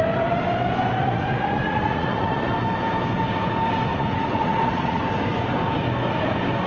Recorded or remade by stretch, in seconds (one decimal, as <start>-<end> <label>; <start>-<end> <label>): 0.0-1.0 recorded; 1.0-2.5 remade; 2.5-3.9 recorded; 3.9-5.0 remade; 5.0-6.7 recorded